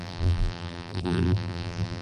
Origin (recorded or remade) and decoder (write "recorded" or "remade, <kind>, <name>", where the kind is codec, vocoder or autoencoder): remade, vocoder, BigVGAN v2